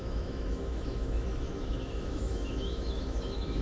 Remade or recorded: remade